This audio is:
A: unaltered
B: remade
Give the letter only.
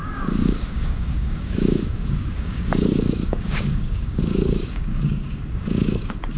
B